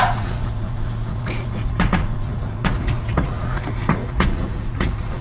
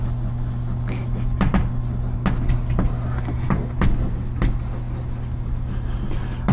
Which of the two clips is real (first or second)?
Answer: second